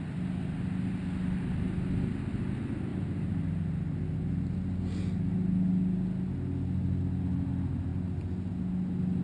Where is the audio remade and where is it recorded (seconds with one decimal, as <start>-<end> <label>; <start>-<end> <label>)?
0.0-9.2 recorded